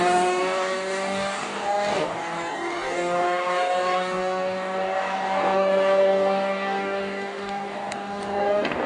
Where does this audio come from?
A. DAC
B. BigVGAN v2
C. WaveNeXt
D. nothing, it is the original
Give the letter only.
A